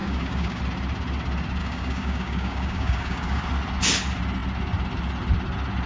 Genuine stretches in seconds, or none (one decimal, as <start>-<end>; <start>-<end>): 0.6-1.6; 3.4-5.9